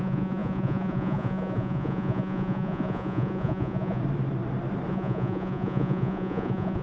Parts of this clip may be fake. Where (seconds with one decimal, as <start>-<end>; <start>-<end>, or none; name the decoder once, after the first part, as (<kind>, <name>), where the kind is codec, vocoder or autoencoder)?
0.0-4.0 (vocoder, Vocos); 4.9-6.8